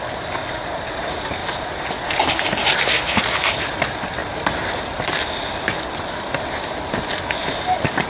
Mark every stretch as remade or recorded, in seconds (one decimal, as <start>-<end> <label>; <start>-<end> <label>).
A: 0.0-8.1 recorded

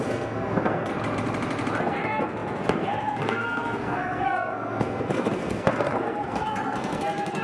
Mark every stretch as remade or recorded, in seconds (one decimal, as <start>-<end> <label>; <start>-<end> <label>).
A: 0.0-0.9 remade; 0.9-1.8 recorded; 1.8-7.4 remade

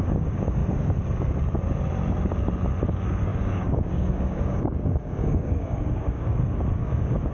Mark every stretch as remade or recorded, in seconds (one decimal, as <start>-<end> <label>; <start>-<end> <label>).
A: 0.0-0.6 remade; 0.6-2.8 recorded; 2.8-7.3 remade